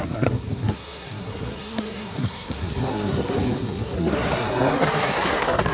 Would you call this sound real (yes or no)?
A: no